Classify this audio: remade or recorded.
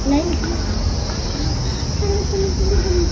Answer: recorded